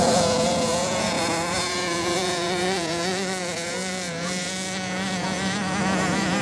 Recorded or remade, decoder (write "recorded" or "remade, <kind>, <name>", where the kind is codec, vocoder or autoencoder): remade, vocoder, Vocos